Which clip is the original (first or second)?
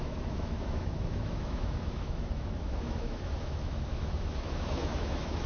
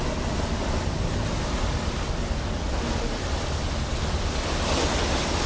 second